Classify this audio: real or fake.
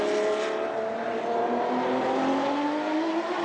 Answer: real